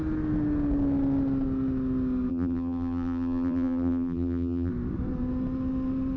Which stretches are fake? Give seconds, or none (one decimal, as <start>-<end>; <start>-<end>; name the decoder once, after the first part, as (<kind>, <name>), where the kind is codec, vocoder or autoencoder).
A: 2.3-4.7 (vocoder, BigVGAN v2)